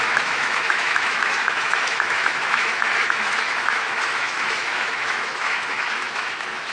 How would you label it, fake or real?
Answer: fake